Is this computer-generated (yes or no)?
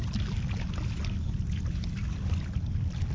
no